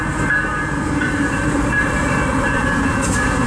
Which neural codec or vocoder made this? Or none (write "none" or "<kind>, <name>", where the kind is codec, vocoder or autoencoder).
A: vocoder, BigVGAN v2